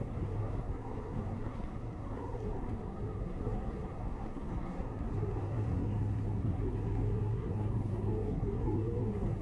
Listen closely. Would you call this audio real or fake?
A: fake